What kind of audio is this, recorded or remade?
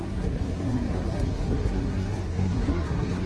remade